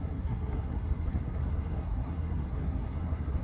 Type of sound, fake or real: fake